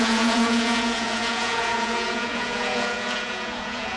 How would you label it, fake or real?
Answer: fake